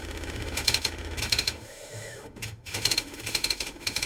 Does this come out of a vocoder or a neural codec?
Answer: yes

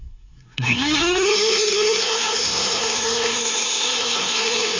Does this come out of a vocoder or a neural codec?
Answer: yes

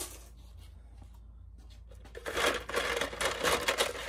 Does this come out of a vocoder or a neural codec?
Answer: no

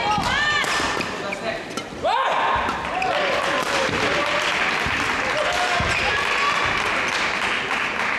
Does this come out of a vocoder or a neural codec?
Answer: no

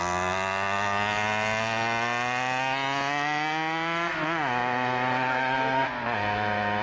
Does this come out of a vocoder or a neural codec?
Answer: no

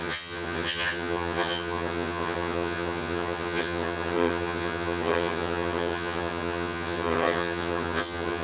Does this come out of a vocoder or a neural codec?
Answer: yes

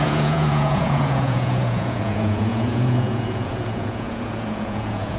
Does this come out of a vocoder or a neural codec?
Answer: yes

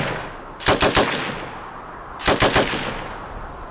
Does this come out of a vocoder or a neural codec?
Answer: no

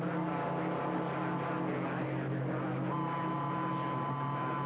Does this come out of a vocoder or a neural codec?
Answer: no